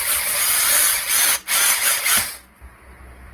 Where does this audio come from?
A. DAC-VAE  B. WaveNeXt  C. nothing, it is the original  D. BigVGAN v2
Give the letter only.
C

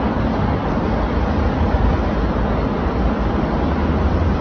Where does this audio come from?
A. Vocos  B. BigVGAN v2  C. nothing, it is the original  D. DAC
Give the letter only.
C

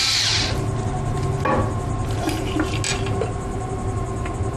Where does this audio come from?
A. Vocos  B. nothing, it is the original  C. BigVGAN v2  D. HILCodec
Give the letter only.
B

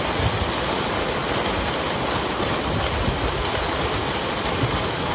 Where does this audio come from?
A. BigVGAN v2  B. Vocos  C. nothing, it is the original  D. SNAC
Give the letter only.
C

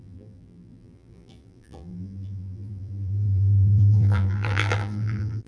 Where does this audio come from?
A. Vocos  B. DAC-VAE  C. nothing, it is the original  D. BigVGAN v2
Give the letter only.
D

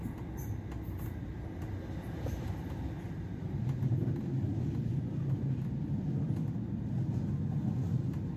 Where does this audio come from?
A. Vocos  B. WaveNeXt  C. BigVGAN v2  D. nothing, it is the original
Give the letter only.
D